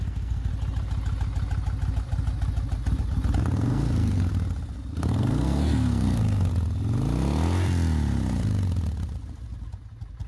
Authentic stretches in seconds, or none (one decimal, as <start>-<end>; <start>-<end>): 0.5-3.4; 4.3-5.0; 6.5-10.3